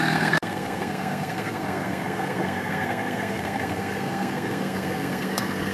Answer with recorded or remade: remade